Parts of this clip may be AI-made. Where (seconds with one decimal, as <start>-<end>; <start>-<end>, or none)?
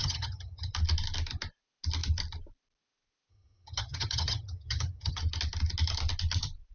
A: 0.0-0.7; 3.3-5.2